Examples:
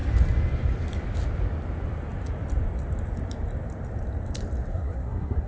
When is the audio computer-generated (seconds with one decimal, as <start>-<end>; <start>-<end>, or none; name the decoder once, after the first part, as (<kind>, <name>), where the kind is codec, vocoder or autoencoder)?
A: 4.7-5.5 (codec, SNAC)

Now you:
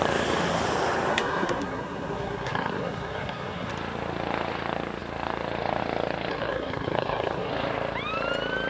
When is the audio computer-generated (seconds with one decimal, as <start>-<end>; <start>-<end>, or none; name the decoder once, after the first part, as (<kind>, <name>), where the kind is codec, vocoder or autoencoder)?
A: 1.1-3.7 (codec, SNAC); 6.3-7.5

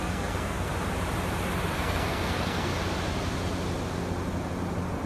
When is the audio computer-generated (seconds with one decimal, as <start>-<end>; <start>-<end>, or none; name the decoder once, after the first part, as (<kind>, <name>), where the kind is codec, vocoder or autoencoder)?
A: 0.0-0.7 (codec, SNAC); 1.7-2.7